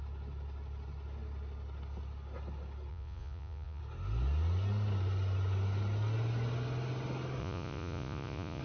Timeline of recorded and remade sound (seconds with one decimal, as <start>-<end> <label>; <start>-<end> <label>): 0.0-2.9 recorded; 2.9-3.8 remade; 3.8-7.4 recorded; 7.4-8.6 remade